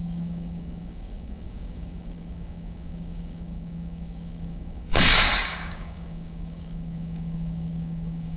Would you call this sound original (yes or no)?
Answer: no